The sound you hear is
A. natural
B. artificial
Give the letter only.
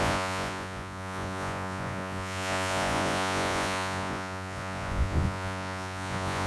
B